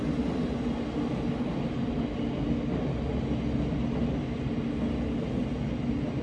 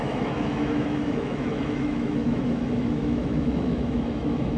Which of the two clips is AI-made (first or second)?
second